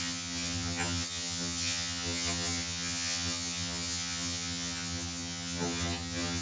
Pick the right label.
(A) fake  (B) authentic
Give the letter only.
A